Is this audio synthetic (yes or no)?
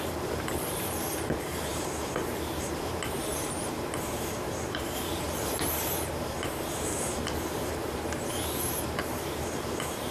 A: yes